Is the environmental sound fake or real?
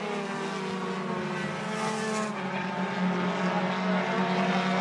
real